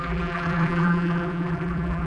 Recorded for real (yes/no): no